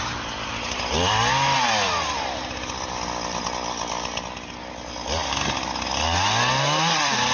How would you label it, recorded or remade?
recorded